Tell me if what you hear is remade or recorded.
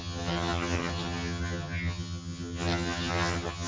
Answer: remade